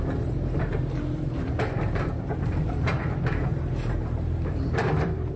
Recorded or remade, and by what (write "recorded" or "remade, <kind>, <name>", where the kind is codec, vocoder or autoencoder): remade, vocoder, BigVGAN v2